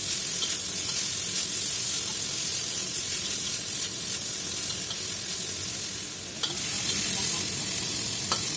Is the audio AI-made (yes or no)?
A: no